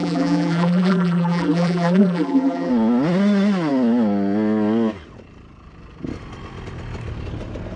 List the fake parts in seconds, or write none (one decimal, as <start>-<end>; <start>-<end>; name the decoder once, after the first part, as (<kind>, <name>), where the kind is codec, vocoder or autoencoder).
0.0-2.7 (vocoder, BigVGAN v2)